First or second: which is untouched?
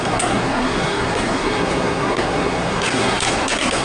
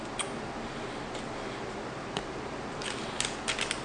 second